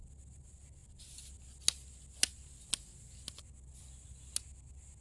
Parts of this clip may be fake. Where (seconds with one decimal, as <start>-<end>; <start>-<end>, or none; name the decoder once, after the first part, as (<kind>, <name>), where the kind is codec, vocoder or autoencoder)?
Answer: none